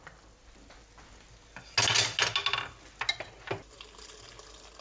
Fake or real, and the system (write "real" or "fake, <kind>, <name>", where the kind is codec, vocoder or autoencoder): real